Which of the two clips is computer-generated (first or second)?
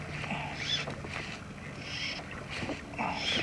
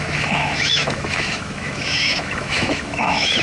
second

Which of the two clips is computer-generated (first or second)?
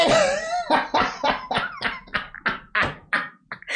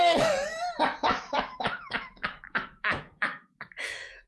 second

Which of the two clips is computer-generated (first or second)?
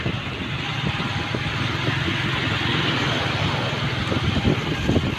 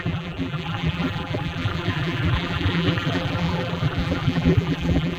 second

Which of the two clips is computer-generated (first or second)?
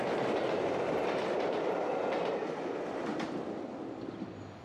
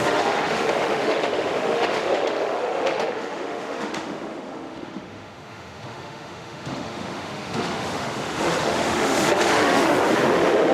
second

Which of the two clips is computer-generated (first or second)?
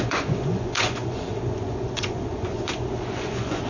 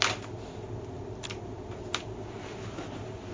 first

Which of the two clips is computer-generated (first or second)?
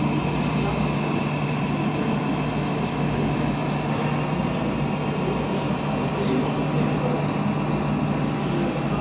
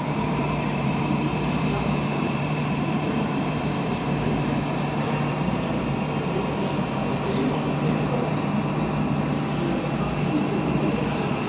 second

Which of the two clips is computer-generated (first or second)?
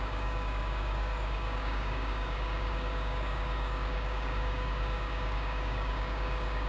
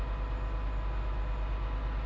first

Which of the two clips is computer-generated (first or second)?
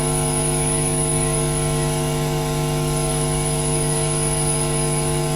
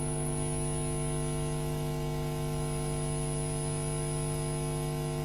first